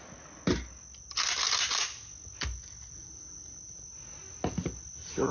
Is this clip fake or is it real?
real